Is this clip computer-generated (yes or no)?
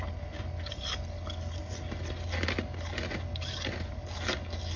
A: no